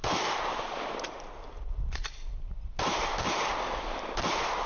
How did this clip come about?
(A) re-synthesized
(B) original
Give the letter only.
B